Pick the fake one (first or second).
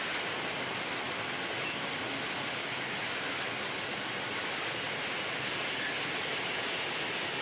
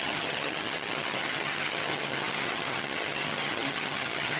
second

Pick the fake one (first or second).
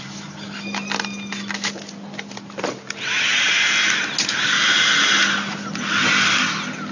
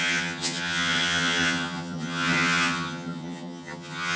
second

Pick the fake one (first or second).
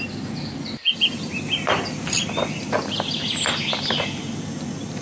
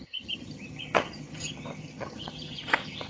second